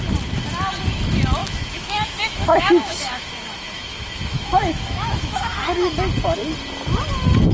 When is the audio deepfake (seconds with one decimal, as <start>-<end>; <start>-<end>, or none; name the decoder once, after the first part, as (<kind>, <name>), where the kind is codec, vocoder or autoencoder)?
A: 1.4-5.9 (autoencoder, DAC-VAE)